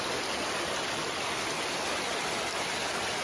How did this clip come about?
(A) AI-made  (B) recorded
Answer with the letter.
B